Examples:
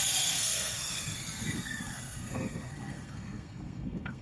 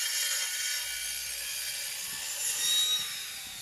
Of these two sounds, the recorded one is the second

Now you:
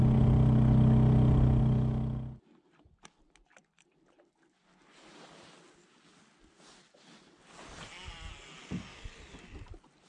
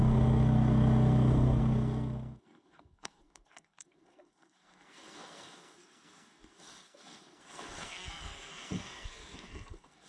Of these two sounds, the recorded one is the first